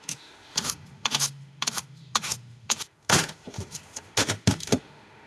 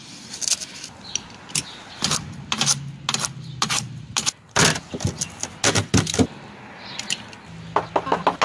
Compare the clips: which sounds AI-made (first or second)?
first